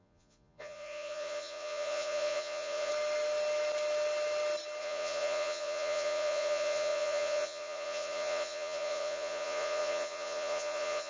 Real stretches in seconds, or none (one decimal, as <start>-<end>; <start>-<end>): 2.9-4.8